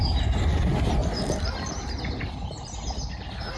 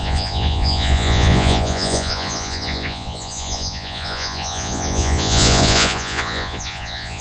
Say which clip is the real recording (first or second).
first